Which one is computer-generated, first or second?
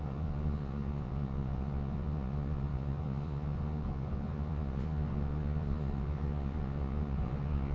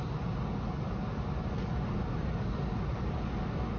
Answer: first